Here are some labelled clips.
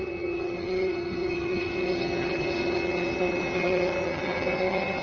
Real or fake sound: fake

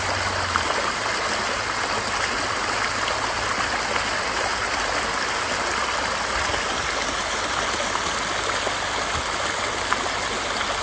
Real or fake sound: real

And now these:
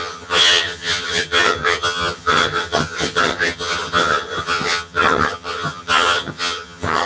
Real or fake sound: fake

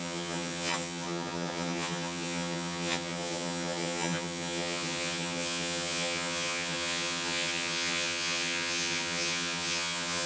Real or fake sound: fake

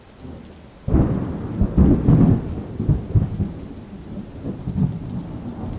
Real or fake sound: real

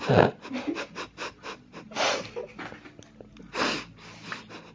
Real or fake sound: real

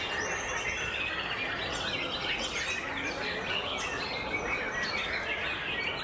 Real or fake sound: real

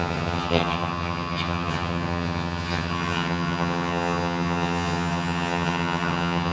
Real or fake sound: fake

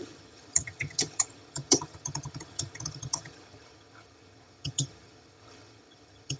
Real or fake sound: fake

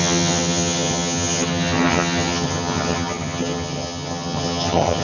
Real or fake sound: fake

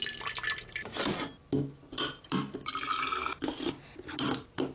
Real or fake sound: real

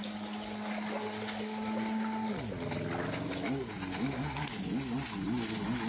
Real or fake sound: real